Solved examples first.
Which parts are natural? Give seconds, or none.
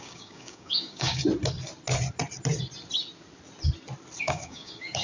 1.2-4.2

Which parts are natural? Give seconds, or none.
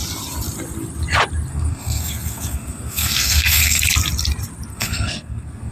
0.0-1.5; 3.8-4.7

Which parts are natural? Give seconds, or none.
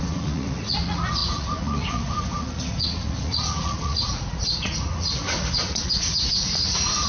none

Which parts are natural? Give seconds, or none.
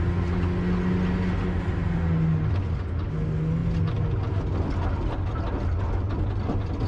0.0-6.9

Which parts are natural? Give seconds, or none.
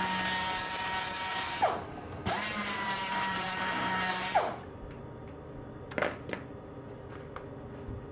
0.0-1.3; 5.0-8.1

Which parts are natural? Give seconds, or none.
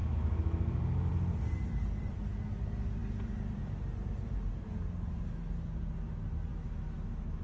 1.1-6.5